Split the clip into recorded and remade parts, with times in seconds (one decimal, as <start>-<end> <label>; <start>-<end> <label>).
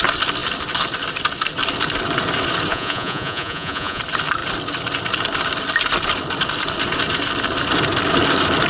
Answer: 0.0-2.7 recorded; 2.7-4.0 remade; 4.0-8.7 recorded